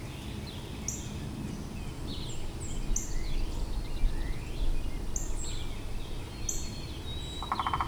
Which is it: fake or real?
real